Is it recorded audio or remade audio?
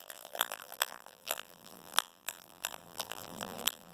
remade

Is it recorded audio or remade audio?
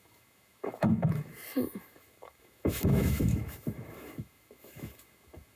remade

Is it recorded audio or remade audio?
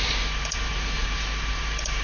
remade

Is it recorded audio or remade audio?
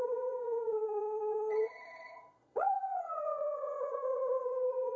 remade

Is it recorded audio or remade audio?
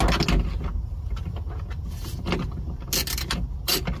recorded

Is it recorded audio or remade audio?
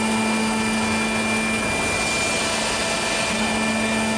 recorded